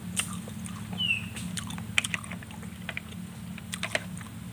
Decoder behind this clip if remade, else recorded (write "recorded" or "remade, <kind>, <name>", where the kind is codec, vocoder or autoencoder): recorded